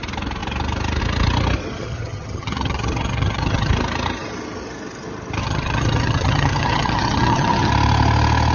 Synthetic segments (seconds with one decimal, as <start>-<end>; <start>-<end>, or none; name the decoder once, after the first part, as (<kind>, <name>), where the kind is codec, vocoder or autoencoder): 1.8-3.7 (vocoder, HiFi-GAN); 5.4-7.7